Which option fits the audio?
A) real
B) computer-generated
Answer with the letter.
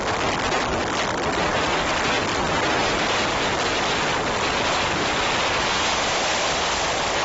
A